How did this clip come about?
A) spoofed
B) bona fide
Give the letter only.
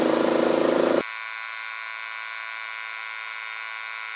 B